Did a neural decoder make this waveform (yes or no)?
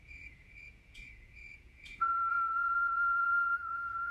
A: yes